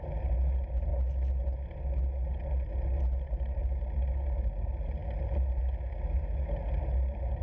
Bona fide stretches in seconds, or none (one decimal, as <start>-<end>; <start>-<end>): 0.0-7.4

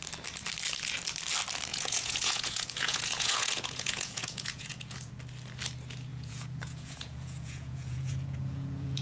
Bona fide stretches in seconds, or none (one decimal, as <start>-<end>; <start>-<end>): 0.0-1.7; 5.1-6.1

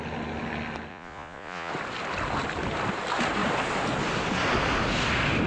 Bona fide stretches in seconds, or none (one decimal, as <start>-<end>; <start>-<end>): 0.0-0.9; 1.7-5.5

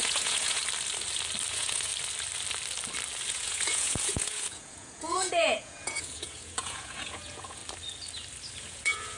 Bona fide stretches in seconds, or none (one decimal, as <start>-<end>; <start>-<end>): 0.6-1.5; 1.9-3.3; 7.6-8.6